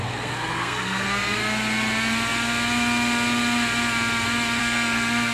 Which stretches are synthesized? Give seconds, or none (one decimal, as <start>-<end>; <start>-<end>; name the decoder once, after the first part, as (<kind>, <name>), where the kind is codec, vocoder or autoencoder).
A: 0.0-1.4 (codec, SNAC); 4.6-5.3